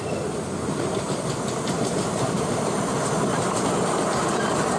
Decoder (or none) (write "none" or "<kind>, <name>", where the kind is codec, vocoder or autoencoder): none